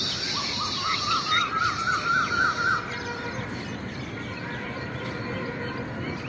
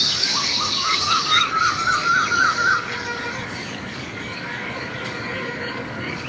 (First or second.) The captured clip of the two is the first